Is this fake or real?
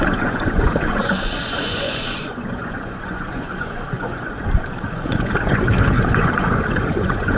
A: fake